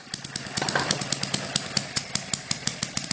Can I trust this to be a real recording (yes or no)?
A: yes